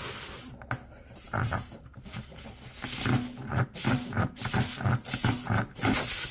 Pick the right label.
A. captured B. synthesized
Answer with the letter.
A